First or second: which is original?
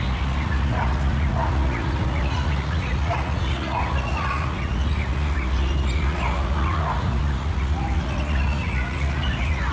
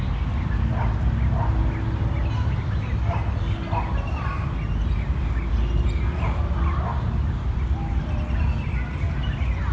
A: second